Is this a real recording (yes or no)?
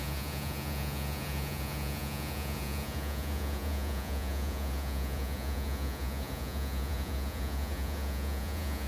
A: no